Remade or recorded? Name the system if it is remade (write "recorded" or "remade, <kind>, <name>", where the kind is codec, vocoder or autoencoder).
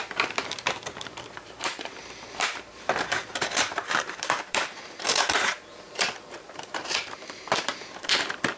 remade, vocoder, BigVGAN v2